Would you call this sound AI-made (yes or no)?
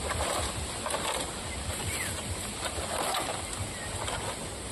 no